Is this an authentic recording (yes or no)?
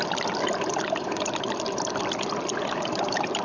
yes